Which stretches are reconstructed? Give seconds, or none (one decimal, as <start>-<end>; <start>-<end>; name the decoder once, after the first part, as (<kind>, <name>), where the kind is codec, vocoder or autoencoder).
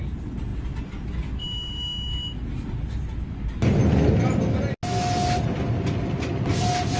none